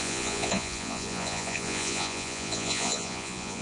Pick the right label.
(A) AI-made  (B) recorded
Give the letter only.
A